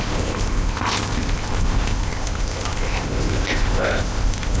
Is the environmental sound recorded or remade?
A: remade